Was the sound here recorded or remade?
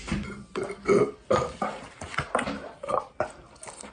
recorded